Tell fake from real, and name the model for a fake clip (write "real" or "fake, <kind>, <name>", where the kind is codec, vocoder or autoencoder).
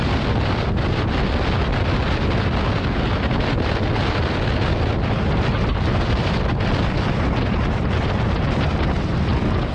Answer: real